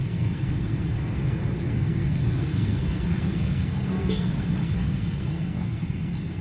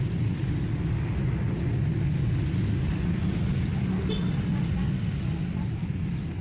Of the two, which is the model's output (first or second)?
first